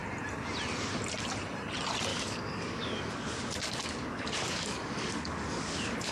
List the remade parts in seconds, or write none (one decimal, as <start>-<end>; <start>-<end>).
2.1-6.1